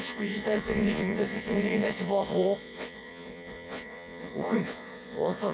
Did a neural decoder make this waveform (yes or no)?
yes